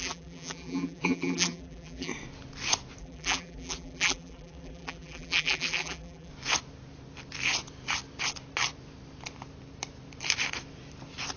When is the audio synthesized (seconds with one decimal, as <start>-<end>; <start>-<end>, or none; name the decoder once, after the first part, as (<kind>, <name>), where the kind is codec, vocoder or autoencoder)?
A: 0.0-2.1 (vocoder, BigVGAN v2); 3.0-6.3